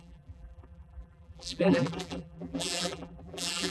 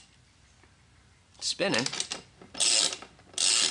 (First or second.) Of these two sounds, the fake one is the first